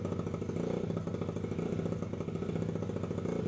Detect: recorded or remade recorded